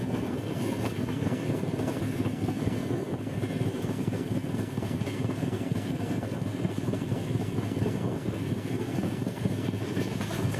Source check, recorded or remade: remade